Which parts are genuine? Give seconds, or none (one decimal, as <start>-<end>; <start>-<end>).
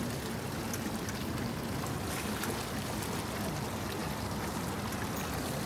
0.0-5.7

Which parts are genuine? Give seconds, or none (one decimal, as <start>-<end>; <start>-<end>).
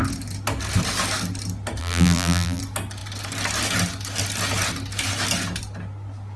0.0-1.8; 2.6-6.4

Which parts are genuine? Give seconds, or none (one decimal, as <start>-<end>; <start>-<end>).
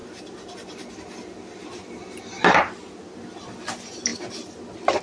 3.0-4.1